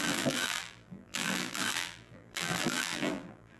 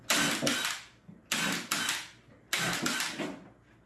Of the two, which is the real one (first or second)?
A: second